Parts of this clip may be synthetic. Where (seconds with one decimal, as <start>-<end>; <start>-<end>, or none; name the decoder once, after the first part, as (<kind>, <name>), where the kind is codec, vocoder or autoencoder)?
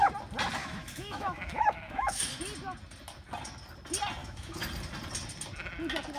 0.6-2.3 (autoencoder, DAC-VAE); 4.2-4.7